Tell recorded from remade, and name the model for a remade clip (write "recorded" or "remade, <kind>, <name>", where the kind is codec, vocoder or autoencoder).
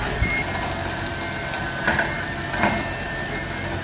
remade, vocoder, BigVGAN v2